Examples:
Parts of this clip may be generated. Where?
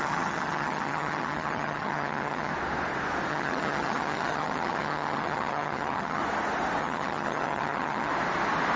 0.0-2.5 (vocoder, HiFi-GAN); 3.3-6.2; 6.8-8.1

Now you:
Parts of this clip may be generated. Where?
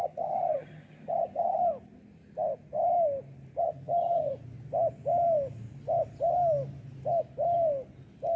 0.0-1.6 (vocoder, HiFi-GAN); 3.6-4.3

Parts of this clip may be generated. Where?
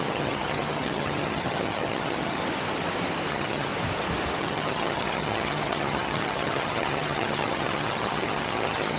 0.0-2.4 (vocoder, HiFi-GAN); 3.3-3.7; 4.4-9.0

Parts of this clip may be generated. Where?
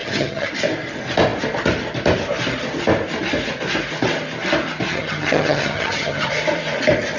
0.0-0.5 (vocoder, HiFi-GAN); 4.9-6.3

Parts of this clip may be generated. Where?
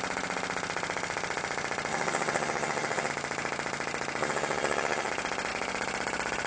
1.9-3.1 (vocoder, HiFi-GAN); 4.2-5.1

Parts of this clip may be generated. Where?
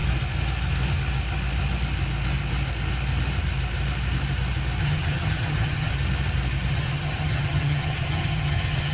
4.8-5.9 (vocoder, HiFi-GAN); 6.7-8.9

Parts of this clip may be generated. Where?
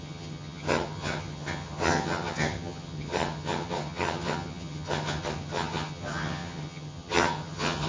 0.0-7.9 (vocoder, HiFi-GAN)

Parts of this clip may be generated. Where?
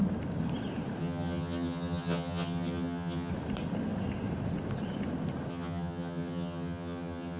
1.0-3.3 (vocoder, HiFi-GAN); 5.5-7.4